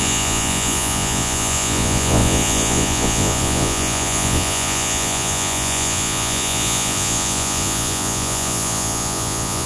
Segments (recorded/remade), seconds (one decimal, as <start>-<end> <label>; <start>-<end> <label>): 0.0-9.7 remade